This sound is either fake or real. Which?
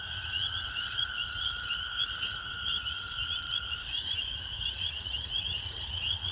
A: fake